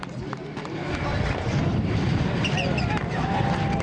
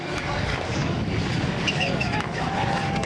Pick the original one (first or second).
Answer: first